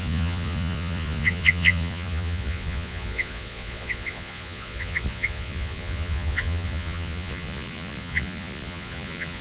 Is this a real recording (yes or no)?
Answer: no